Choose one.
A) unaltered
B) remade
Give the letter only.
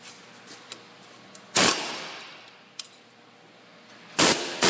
B